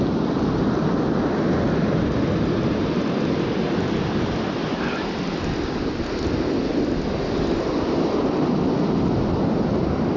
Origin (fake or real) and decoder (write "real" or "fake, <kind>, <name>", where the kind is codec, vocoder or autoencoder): real